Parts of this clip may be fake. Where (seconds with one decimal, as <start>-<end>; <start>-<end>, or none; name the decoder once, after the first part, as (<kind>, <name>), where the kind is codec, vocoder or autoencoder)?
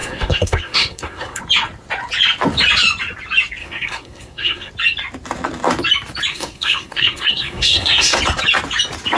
0.0-1.4 (codec, SNAC); 3.6-4.7; 6.3-8.2